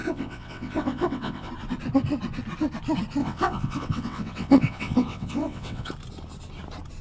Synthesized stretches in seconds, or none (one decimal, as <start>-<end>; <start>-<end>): 0.0-1.5; 3.2-5.9